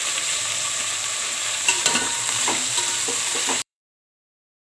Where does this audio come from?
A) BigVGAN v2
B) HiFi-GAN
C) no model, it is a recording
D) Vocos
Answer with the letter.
A